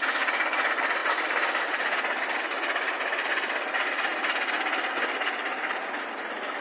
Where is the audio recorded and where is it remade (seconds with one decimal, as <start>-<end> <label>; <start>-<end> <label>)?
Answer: 0.0-6.6 recorded